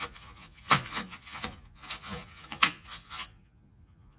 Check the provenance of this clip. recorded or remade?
remade